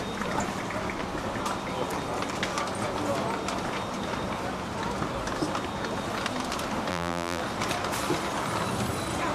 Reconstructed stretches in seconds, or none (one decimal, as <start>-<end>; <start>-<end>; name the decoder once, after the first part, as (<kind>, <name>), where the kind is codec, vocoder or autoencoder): 6.9-7.4 (vocoder, BigVGAN v2)